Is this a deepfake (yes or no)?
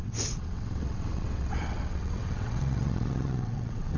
yes